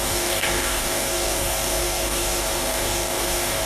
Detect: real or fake fake